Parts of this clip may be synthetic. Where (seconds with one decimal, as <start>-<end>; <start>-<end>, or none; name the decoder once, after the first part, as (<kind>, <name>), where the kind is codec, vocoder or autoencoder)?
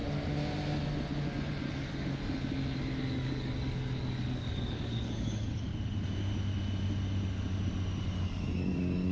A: 1.5-2.2 (codec, DAC); 3.0-5.7; 8.0-9.1